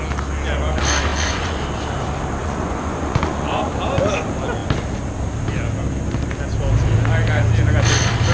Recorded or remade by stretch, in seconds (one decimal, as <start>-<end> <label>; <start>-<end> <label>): 0.0-1.1 recorded; 1.1-1.6 remade; 1.6-2.4 recorded; 2.4-3.7 remade; 3.7-8.3 recorded